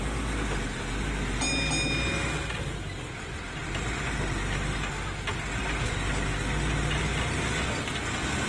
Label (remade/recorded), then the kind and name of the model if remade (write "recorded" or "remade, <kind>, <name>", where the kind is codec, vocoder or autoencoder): recorded